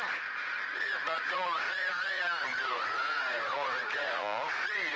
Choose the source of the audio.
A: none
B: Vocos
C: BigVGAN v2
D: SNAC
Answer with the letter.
B